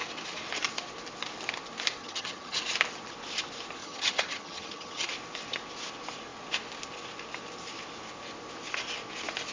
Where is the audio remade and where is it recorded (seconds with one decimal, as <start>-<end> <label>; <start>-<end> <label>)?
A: 0.0-2.0 recorded; 2.0-2.6 remade; 2.6-3.8 recorded; 3.8-5.1 remade; 5.1-9.5 recorded